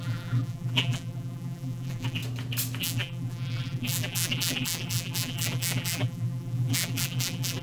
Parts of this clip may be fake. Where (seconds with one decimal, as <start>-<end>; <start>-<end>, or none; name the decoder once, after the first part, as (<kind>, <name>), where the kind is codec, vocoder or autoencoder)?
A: 0.0-2.2 (vocoder, BigVGAN v2); 2.8-7.6